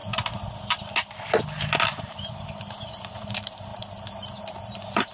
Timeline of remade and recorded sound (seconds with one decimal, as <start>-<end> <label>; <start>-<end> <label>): 0.0-1.8 recorded; 1.8-5.1 remade